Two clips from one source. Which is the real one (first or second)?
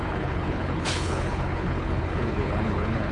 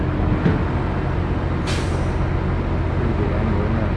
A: second